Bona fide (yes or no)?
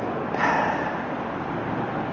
yes